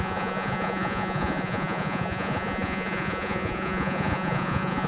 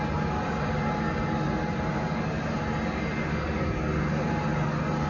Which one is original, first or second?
second